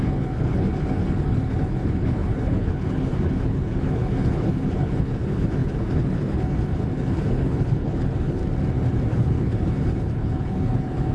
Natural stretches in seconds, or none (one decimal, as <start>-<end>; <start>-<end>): 8.4-9.1